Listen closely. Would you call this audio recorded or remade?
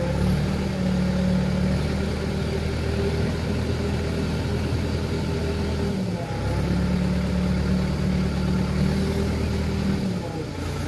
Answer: recorded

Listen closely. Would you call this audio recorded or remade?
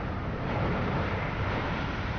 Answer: remade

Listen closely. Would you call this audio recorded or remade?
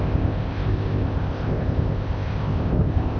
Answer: remade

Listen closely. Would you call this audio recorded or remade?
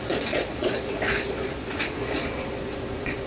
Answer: remade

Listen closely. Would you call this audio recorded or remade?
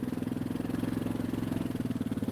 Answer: recorded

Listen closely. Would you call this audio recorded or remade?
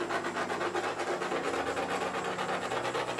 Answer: recorded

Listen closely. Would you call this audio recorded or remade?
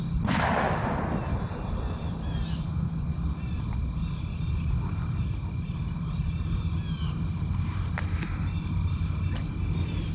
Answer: recorded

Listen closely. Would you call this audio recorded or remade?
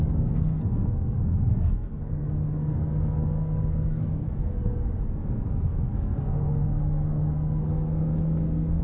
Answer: remade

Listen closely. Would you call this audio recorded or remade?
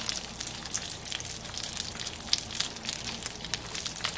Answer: recorded